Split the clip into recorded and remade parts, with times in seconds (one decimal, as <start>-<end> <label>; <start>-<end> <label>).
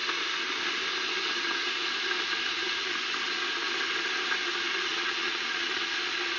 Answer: 0.0-4.9 recorded; 4.9-5.7 remade; 5.7-6.4 recorded